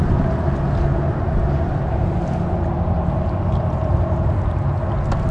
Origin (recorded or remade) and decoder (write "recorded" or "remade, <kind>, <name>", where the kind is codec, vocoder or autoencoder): recorded